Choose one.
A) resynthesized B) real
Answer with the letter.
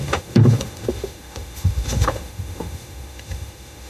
A